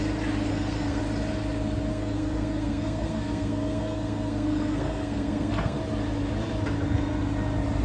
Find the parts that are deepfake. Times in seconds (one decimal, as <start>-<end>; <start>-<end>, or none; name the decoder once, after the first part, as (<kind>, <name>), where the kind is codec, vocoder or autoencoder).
0.5-1.0 (codec, SNAC); 1.9-5.8